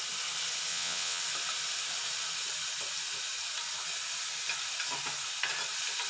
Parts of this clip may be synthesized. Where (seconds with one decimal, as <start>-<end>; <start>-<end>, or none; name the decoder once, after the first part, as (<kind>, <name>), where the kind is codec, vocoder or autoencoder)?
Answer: 0.7-1.2 (vocoder, WaveNeXt)